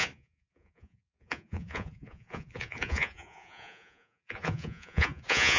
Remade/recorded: remade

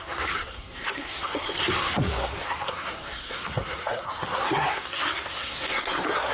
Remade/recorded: remade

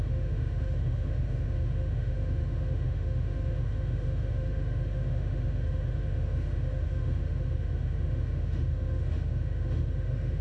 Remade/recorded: remade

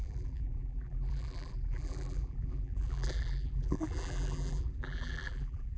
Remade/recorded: remade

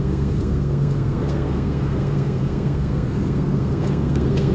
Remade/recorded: remade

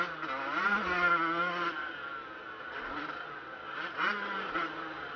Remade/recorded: recorded